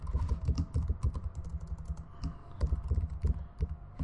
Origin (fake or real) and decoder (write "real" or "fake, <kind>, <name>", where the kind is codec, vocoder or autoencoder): real